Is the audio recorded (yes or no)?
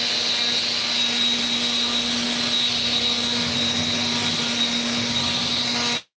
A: yes